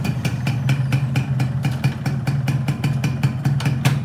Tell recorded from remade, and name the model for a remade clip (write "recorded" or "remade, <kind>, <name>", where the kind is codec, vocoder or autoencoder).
recorded